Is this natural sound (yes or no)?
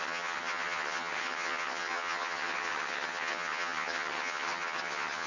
no